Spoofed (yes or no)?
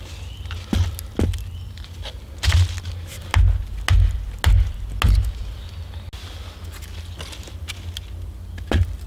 no